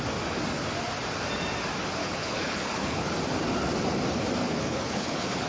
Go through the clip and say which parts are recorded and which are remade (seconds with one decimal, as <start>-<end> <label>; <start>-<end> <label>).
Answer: 0.0-2.0 recorded; 2.0-3.1 remade; 3.1-4.4 recorded; 4.4-5.5 remade